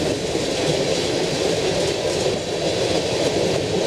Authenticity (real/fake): real